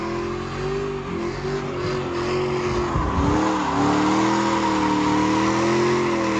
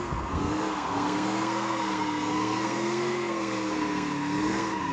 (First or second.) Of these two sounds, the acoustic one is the first